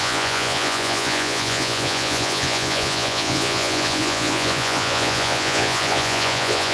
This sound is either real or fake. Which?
fake